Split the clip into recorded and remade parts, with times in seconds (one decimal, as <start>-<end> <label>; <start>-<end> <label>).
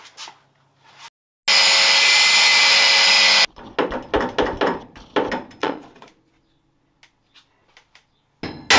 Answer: 0.0-5.6 recorded; 5.6-6.1 remade; 6.1-8.8 recorded